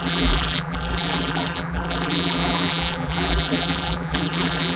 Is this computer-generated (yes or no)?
yes